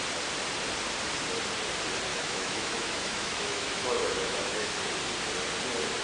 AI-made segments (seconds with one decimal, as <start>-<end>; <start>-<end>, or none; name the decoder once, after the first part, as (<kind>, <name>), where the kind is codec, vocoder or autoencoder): 2.1-4.7 (autoencoder, DAC-VAE)